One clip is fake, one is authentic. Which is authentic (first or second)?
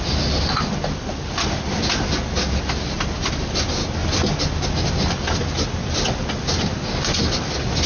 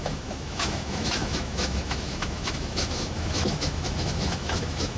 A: first